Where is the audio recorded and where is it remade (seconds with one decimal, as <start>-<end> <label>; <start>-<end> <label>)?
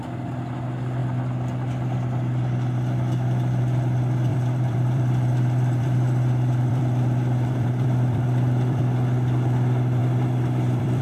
0.0-4.3 recorded; 4.3-8.8 remade; 8.8-10.0 recorded; 10.0-11.0 remade